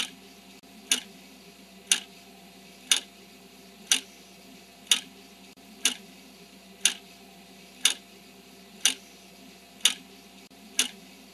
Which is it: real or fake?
real